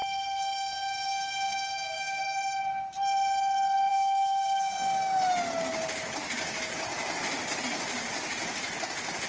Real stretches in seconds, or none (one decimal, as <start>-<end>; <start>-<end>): 2.2-3.9; 5.2-9.3